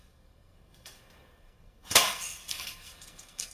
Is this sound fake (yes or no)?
yes